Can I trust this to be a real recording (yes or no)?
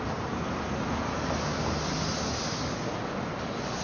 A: yes